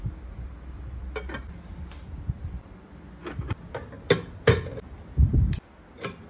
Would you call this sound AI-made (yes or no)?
no